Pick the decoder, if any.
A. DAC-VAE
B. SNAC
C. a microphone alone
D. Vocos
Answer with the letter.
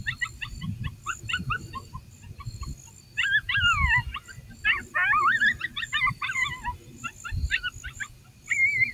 C